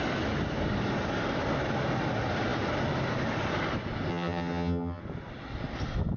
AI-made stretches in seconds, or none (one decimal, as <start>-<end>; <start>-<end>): 4.1-5.0